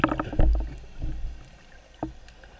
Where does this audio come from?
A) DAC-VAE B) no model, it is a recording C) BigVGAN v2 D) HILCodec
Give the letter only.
B